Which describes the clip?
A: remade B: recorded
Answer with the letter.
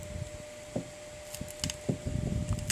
B